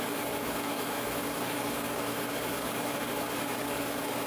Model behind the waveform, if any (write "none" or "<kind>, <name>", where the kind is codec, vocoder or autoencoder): codec, DAC